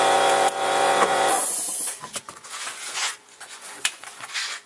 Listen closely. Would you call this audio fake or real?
fake